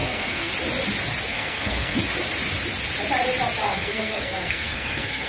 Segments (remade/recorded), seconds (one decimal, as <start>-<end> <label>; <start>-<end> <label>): 0.0-0.5 remade; 0.5-1.3 recorded; 1.3-2.0 remade; 2.0-3.6 recorded; 3.6-5.3 remade